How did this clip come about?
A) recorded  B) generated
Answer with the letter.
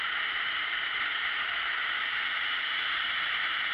B